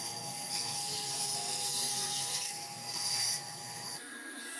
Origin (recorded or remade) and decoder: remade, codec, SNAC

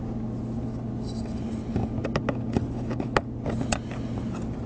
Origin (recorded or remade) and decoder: recorded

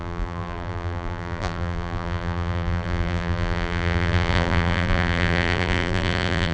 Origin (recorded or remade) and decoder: remade, vocoder, BigVGAN v2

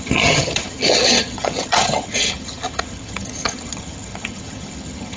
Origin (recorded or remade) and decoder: remade, vocoder, HiFi-GAN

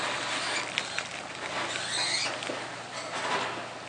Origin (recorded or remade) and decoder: recorded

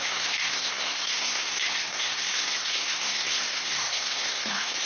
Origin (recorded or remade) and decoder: remade, codec, SNAC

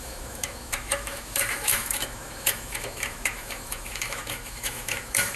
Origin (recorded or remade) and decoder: remade, autoencoder, DAC-VAE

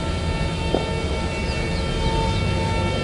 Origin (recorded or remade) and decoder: recorded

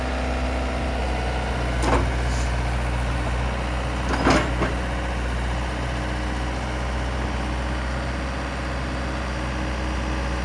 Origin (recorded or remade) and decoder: recorded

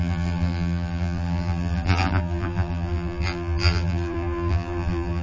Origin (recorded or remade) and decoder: remade, vocoder, BigVGAN v2